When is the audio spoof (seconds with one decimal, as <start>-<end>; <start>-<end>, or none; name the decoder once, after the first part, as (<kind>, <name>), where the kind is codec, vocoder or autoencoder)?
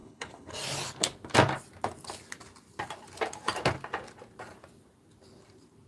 0.0-0.5 (codec, HILCodec)